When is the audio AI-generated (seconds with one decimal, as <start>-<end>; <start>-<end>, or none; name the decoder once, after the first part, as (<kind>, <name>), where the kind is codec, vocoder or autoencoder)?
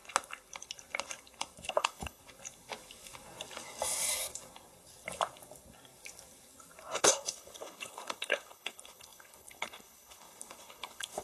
1.7-2.2 (codec, HILCodec); 7.0-11.2